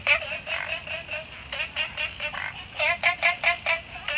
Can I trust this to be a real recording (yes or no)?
yes